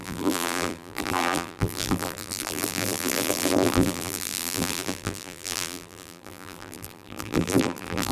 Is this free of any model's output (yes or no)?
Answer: no